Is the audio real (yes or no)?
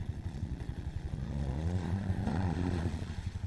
no